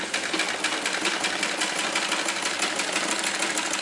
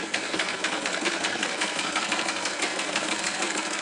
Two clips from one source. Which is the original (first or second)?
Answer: first